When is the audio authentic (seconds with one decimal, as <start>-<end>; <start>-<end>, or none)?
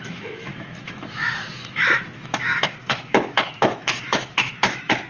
none